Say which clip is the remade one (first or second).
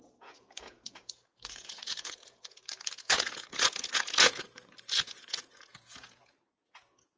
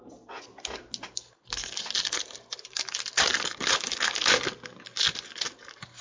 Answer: first